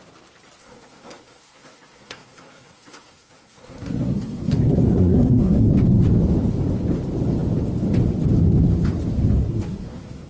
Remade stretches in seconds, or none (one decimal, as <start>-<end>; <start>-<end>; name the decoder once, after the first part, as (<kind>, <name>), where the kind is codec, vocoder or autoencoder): 0.6-5.7 (codec, SNAC); 9.4-10.3